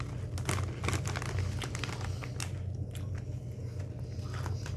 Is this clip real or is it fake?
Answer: real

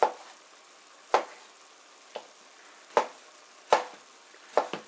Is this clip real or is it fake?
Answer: real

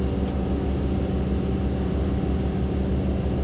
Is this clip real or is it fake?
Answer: real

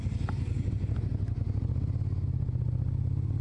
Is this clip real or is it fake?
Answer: real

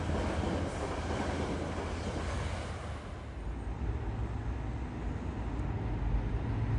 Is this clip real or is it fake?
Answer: real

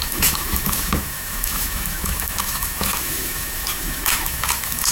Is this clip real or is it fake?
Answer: fake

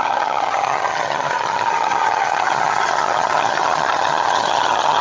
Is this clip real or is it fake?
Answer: fake